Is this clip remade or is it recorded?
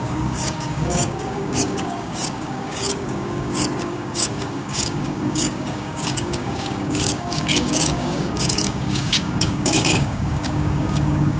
remade